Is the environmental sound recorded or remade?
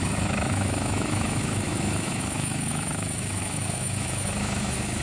remade